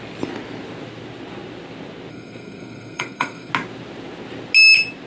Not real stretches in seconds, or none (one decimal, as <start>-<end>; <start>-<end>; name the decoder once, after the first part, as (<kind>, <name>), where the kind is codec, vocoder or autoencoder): 2.1-3.5 (codec, SNAC)